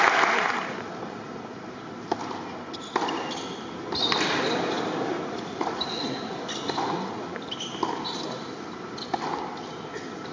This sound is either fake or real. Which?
real